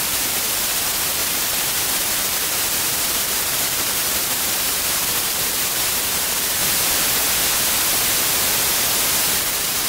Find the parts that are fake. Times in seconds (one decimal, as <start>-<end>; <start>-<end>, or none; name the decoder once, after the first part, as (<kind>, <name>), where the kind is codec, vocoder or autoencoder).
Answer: 0.0-6.6 (vocoder, BigVGAN v2); 9.4-9.9